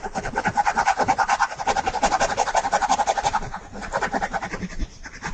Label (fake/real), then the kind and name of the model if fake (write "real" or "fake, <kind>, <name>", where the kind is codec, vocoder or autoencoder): real